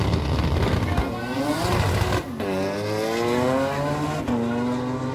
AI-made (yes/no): no